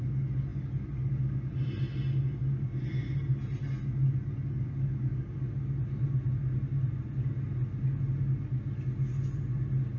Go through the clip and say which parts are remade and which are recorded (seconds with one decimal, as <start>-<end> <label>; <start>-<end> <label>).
0.0-10.0 recorded